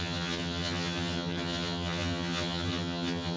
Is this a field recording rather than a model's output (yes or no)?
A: no